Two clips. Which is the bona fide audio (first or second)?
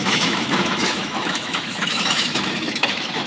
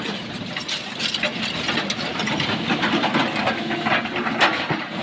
second